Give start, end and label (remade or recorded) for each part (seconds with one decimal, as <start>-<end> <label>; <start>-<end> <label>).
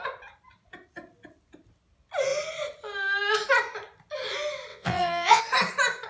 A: 0.0-4.7 recorded; 4.7-5.4 remade; 5.4-6.1 recorded